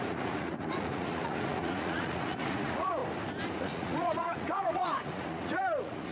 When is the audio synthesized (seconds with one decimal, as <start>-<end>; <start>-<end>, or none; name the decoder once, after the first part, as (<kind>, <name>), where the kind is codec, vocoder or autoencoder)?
0.0-3.0 (vocoder, Vocos); 3.6-6.1